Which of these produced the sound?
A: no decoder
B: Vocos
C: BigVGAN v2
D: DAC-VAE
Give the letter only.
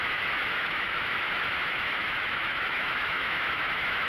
D